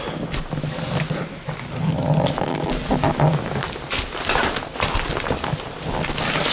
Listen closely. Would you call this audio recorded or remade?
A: recorded